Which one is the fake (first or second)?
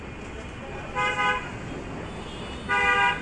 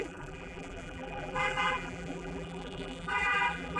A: second